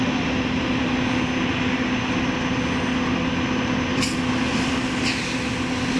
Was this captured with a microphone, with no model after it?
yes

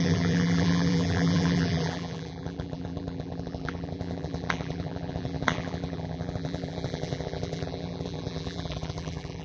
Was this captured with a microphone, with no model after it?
no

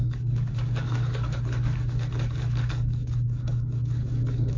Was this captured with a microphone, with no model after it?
no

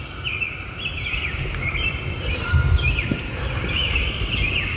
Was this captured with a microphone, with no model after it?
no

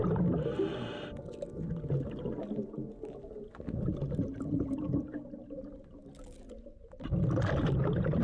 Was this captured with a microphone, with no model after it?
yes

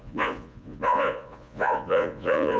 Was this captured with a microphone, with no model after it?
no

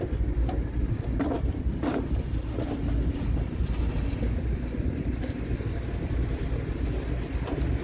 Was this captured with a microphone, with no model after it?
yes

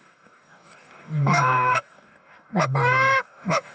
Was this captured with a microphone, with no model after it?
no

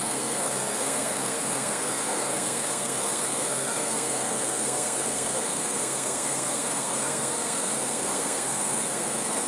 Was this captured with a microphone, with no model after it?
no